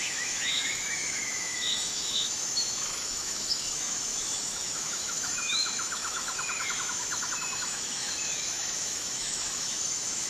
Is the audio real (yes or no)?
no